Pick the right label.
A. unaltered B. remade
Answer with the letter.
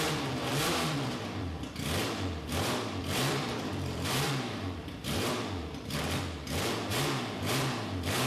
B